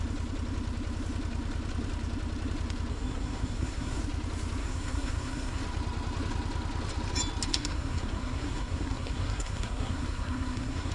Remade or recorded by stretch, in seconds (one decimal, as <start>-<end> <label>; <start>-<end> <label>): 0.0-2.9 recorded; 2.9-4.0 remade; 4.0-4.6 recorded; 4.6-5.6 remade; 5.6-7.5 recorded; 7.5-10.9 remade

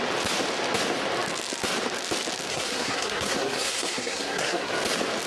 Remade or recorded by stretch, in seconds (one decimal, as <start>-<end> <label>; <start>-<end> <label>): 0.0-2.5 recorded; 2.5-4.7 remade; 4.7-5.3 recorded

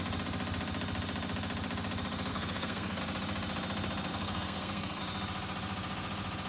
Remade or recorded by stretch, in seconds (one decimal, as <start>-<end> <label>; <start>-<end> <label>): 0.0-2.3 recorded; 2.3-3.0 remade; 3.0-4.1 recorded; 4.1-5.0 remade; 5.0-6.5 recorded

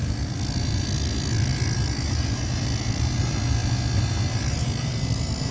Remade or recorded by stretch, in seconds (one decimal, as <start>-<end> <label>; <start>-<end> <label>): 0.0-5.5 recorded